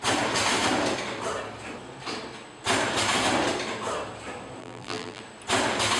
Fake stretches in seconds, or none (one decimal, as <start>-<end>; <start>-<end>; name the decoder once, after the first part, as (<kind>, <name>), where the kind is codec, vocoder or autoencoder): 4.6-5.2 (vocoder, BigVGAN v2)